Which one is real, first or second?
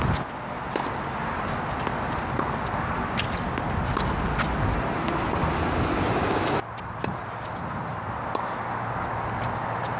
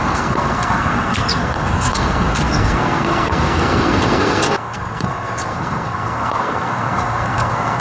first